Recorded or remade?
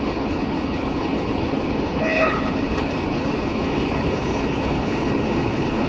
remade